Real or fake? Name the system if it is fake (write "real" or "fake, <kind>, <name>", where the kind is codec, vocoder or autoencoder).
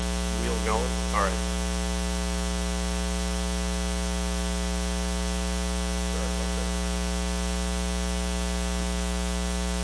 real